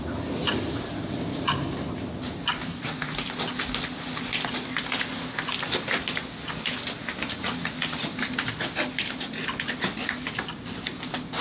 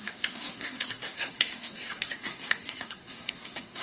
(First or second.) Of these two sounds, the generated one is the second